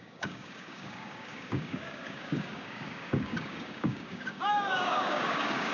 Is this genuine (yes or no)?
no